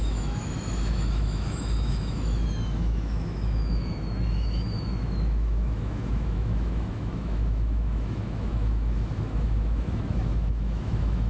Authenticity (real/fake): fake